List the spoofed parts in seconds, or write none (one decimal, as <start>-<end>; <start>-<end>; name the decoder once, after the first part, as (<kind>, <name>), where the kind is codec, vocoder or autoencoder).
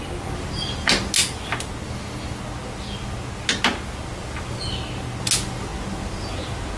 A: none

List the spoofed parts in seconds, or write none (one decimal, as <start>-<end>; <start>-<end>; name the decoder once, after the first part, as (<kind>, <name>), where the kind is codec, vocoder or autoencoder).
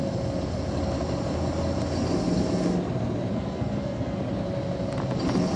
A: 3.3-4.2 (codec, SNAC)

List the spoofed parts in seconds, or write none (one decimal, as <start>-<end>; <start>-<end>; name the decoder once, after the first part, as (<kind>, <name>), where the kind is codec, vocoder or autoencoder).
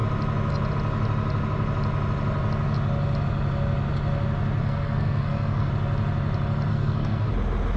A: 4.6-5.7 (codec, SNAC); 6.7-7.3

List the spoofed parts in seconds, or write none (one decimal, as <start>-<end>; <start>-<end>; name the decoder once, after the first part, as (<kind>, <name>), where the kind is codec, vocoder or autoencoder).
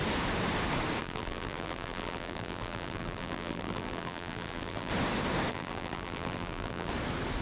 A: 1.0-4.9 (vocoder, BigVGAN v2); 5.5-6.9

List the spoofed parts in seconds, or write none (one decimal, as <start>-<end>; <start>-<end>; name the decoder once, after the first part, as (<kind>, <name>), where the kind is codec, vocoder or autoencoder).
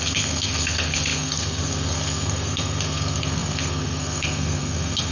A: 0.0-5.1 (codec, SNAC)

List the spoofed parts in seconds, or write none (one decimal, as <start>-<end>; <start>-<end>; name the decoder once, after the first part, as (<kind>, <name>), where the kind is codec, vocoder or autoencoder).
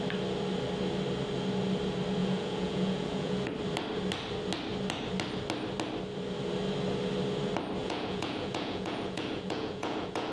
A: 2.2-3.5 (vocoder, Vocos); 7.8-10.3